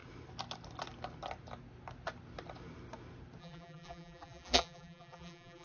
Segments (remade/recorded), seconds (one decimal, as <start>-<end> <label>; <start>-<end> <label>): 0.0-3.4 recorded; 3.4-5.6 remade